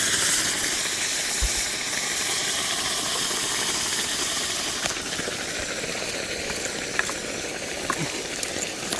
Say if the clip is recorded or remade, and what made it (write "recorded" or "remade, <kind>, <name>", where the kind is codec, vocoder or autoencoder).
recorded